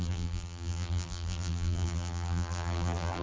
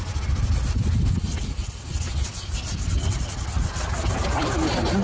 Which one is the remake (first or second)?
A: first